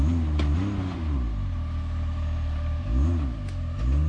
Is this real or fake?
real